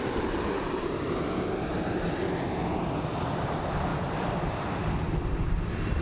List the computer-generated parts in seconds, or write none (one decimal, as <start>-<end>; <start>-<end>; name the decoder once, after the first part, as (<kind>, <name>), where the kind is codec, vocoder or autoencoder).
3.9-4.9 (vocoder, BigVGAN v2)